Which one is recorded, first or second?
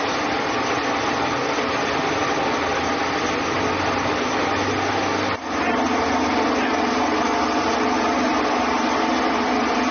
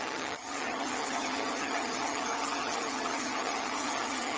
first